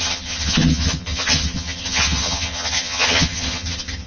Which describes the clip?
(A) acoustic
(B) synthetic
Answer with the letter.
B